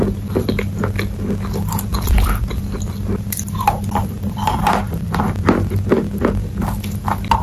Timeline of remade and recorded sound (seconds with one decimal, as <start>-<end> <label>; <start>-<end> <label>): 0.0-1.9 recorded; 1.9-2.9 remade; 2.9-4.0 recorded; 4.0-5.2 remade; 5.2-7.4 recorded